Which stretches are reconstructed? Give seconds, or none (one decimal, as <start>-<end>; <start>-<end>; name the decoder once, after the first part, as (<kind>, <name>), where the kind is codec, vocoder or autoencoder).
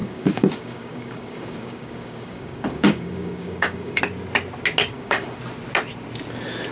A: 0.0-4.0 (codec, DAC); 4.8-5.4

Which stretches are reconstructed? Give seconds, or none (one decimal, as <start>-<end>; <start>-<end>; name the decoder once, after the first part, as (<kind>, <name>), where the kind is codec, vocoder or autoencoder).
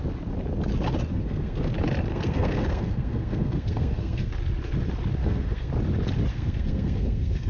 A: 1.1-1.7 (codec, SNAC); 2.1-4.3; 5.2-5.7; 6.3-7.5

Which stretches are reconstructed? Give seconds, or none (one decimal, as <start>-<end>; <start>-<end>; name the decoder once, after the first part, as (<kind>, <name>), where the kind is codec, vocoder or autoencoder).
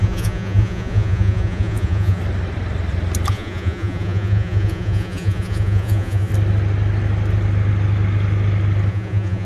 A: 0.0-2.2 (vocoder, Vocos); 3.3-6.3; 8.9-9.4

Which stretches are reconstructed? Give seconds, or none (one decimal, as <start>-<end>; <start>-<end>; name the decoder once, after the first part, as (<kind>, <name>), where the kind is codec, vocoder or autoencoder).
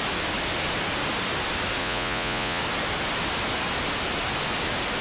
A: 1.8-2.6 (vocoder, Vocos)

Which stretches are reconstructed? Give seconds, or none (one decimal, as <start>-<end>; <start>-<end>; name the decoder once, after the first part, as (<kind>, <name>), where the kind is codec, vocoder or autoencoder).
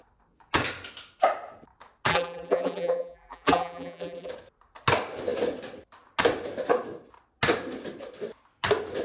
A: 2.1-4.3 (vocoder, BigVGAN v2)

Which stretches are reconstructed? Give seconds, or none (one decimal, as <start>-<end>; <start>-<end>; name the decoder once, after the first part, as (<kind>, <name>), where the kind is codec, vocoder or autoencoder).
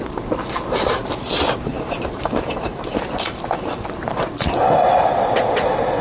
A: 1.7-4.3 (vocoder, BigVGAN v2)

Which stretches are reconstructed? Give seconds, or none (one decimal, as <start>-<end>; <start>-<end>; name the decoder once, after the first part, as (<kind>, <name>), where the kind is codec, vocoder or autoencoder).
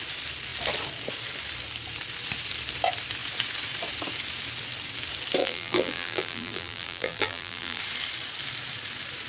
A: 5.4-7.8 (vocoder, BigVGAN v2)